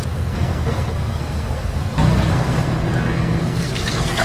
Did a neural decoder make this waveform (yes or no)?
yes